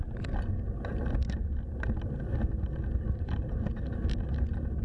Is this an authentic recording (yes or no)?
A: yes